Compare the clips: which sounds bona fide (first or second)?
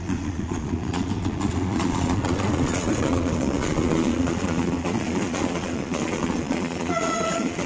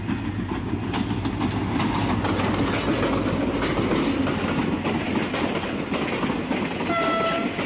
second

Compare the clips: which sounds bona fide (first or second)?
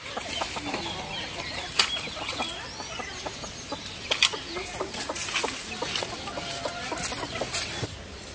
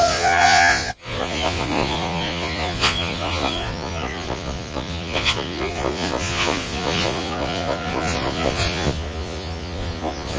first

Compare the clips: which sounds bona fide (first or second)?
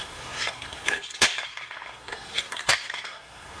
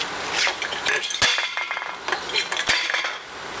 second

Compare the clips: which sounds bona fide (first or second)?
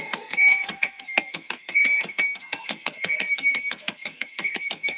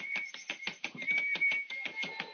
second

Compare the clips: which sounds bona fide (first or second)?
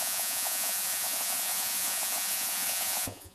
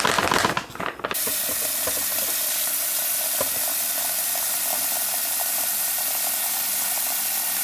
second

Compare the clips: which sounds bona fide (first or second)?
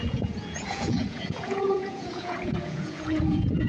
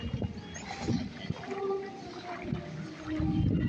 second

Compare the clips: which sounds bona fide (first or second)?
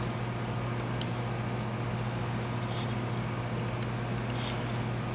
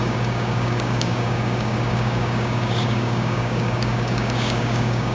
first